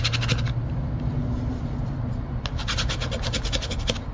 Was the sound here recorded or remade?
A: recorded